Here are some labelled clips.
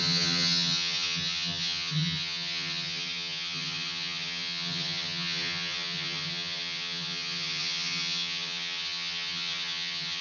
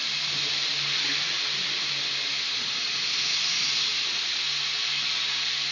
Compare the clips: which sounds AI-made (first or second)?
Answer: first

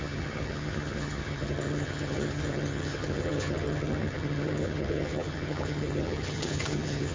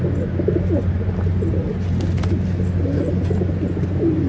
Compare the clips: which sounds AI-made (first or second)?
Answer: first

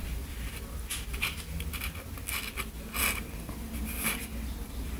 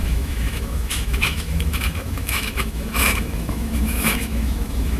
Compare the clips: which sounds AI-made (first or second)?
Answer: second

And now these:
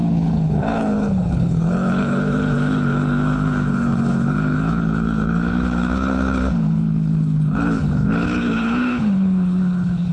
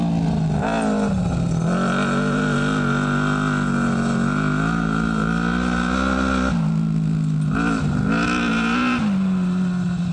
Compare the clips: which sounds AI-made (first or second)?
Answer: first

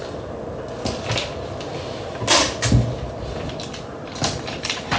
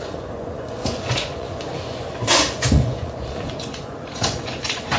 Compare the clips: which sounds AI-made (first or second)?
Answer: second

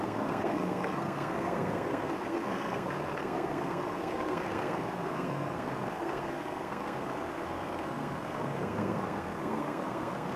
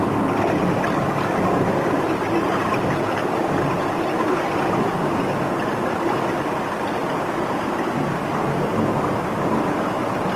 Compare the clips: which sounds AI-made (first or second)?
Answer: first